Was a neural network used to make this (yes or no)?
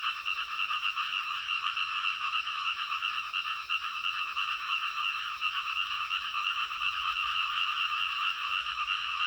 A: yes